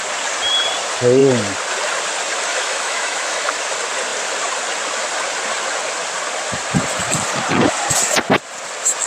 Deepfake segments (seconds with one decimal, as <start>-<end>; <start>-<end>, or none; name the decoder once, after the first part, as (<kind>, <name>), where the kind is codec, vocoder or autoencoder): 2.5-3.6 (autoencoder, DAC-VAE)

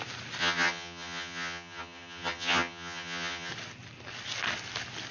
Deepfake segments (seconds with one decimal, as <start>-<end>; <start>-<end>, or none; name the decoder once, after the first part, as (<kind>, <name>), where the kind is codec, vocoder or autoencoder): 0.4-3.5 (vocoder, HiFi-GAN)

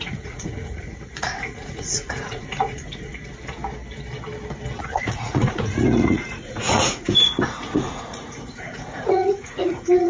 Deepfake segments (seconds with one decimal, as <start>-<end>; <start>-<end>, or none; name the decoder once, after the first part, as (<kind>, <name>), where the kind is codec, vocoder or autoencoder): 0.0-3.1 (vocoder, Vocos); 4.8-10.1